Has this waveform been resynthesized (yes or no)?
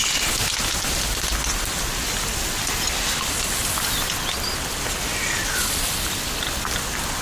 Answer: no